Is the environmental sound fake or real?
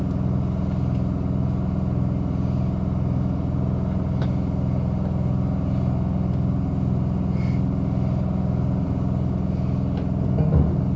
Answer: real